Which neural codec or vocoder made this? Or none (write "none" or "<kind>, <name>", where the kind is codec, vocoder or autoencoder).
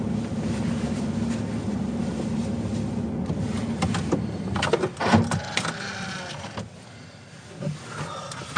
none